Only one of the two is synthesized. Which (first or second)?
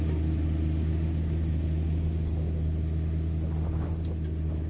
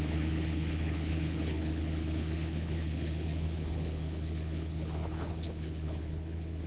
second